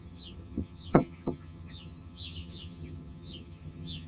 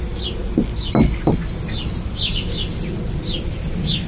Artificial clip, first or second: first